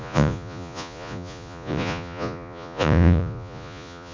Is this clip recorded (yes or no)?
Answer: no